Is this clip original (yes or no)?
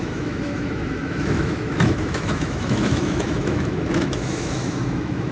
no